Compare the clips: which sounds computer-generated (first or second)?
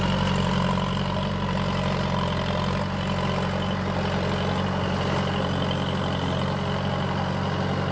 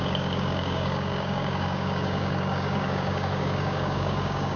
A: second